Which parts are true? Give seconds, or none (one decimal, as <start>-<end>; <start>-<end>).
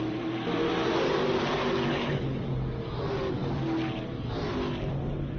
0.0-1.9; 2.4-5.4